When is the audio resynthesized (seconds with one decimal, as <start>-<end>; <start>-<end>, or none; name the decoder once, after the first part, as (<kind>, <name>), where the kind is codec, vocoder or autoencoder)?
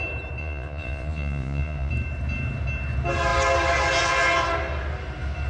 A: 0.4-1.9 (vocoder, Vocos)